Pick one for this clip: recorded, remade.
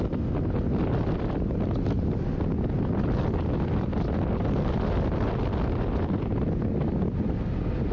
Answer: recorded